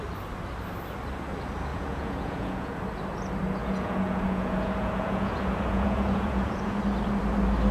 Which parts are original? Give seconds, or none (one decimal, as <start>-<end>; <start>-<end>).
0.0-1.7; 2.7-3.6; 6.8-7.7